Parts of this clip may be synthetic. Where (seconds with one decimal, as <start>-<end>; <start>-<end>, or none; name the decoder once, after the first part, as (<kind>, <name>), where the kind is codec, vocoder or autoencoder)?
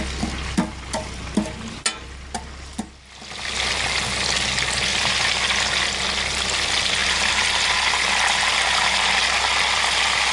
none